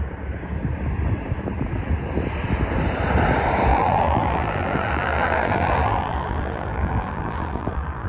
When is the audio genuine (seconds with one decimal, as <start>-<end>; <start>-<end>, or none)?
0.0-3.7